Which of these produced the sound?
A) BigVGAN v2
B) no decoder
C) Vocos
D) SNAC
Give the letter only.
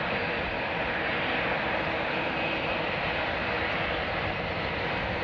B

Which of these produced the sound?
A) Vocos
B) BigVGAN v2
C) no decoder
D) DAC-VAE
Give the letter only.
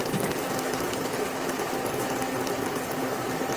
C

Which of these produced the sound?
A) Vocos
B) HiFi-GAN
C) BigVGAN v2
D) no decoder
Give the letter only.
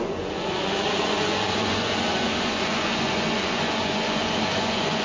A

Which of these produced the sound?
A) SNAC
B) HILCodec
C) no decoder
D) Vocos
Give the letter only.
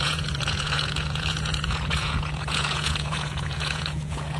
D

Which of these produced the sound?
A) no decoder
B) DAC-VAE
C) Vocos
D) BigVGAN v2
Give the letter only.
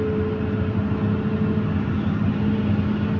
A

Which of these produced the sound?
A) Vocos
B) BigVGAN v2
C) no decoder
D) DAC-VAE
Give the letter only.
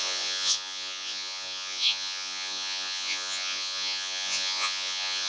A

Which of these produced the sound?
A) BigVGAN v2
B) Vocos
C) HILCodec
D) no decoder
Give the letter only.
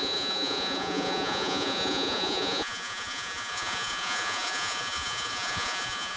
B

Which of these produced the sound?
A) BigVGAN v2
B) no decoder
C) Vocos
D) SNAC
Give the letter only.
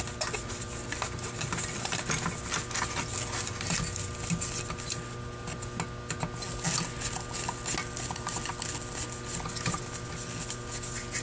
B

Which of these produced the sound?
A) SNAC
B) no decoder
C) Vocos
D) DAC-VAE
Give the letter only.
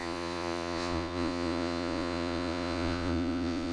C